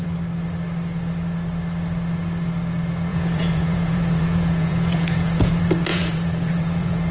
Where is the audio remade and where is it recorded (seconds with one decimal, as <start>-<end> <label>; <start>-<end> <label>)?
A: 0.0-3.1 recorded; 3.1-5.5 remade; 5.5-5.9 recorded; 5.9-7.1 remade